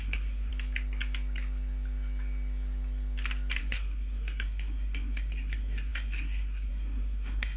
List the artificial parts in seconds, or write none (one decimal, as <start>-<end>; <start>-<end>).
0.0-0.5; 3.6-7.6